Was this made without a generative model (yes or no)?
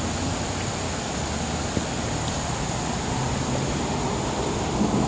yes